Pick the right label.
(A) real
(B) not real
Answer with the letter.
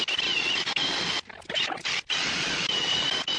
A